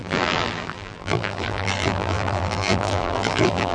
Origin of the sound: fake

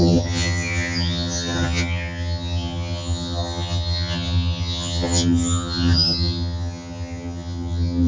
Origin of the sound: fake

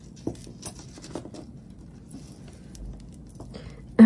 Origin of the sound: real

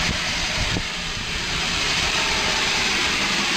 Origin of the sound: fake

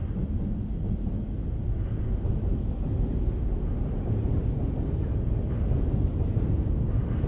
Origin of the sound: real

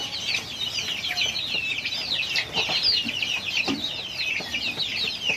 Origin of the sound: real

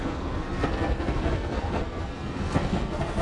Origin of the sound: fake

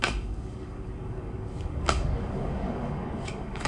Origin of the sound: fake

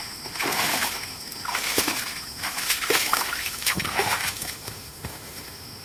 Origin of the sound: fake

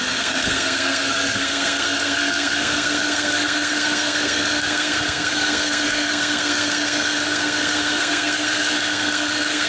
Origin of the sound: fake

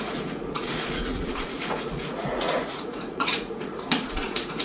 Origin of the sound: fake